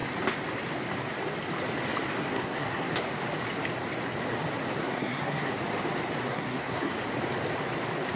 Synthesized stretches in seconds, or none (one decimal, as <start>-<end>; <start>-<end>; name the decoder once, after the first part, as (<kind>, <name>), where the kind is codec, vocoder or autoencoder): 2.2-2.9 (codec, SNAC); 4.8-5.5; 6.2-6.9